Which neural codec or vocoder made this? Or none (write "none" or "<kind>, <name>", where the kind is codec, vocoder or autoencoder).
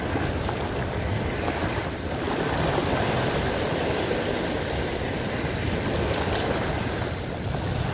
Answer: none